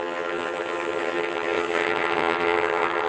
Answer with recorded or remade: remade